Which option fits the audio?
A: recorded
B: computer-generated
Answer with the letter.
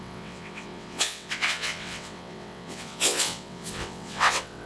B